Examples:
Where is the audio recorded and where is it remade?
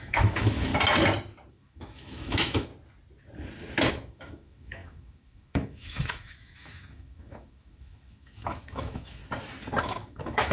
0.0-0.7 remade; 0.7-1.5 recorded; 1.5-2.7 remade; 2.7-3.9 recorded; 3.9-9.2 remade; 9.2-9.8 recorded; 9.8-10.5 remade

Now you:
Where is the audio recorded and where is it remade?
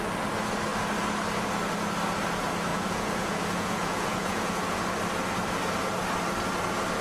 0.0-2.7 recorded; 2.7-4.8 remade; 4.8-7.0 recorded